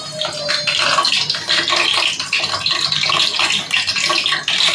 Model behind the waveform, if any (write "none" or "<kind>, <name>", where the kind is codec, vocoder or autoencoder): none